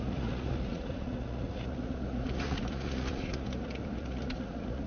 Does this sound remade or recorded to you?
remade